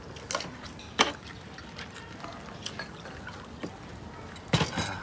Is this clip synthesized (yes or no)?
no